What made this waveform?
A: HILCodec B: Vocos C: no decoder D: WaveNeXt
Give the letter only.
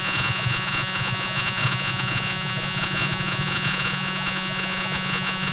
B